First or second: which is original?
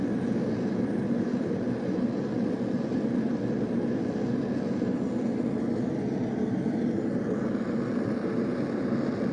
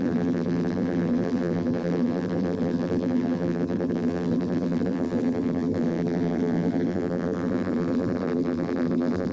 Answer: first